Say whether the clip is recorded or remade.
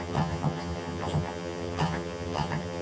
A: remade